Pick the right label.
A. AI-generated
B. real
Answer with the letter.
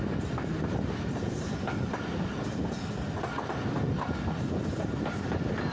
B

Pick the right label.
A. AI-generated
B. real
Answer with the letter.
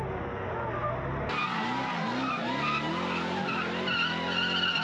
B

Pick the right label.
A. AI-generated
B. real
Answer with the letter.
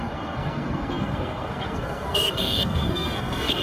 A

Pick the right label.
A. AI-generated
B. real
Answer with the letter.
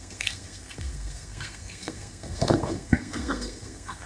A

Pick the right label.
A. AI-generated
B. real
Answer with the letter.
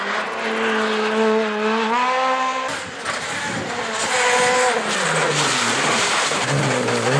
B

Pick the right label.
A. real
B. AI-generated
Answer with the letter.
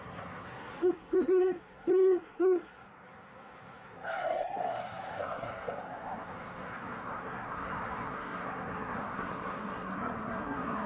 B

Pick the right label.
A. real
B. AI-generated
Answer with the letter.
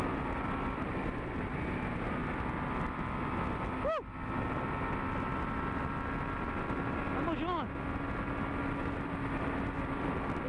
A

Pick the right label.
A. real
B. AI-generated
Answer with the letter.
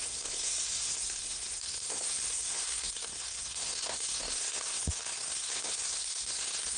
B